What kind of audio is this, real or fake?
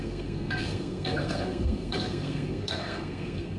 fake